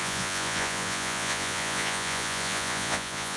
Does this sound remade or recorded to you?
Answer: remade